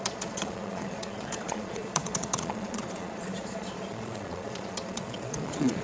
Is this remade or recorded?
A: remade